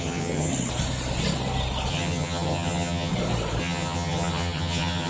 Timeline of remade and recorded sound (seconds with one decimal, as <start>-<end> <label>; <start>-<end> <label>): 0.0-0.5 remade; 0.5-1.9 recorded; 1.9-3.1 remade; 3.1-3.6 recorded; 3.6-5.1 remade